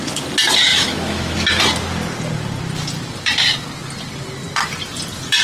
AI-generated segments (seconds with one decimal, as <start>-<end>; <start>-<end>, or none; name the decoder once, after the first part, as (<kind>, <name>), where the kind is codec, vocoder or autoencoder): 0.7-1.6 (autoencoder, DAC-VAE)